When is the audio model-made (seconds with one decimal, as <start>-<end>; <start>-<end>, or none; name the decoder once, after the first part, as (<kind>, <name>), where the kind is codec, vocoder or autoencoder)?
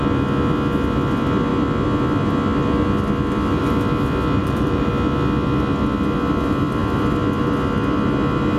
4.4-4.9 (vocoder, BigVGAN v2)